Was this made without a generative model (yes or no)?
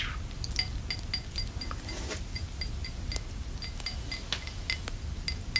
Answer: yes